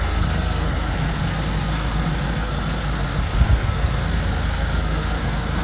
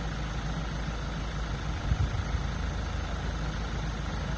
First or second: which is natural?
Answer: second